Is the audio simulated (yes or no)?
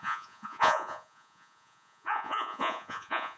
yes